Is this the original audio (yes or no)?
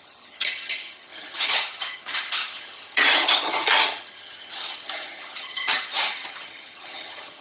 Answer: no